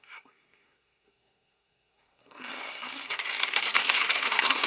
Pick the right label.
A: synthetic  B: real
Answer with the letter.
A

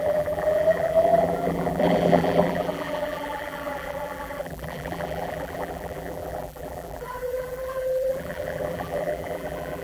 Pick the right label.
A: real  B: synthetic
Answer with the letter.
B